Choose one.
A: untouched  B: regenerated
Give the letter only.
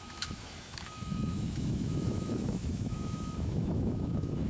B